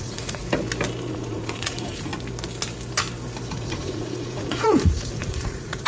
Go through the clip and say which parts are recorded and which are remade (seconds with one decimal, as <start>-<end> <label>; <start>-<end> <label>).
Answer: 0.0-0.4 remade; 0.4-1.1 recorded; 1.1-2.1 remade; 2.1-3.5 recorded; 3.5-5.9 remade